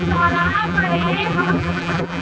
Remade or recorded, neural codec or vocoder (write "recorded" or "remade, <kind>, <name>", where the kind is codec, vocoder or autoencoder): remade, vocoder, BigVGAN v2